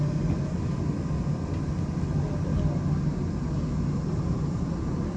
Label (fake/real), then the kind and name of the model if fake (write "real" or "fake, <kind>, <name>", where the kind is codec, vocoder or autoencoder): real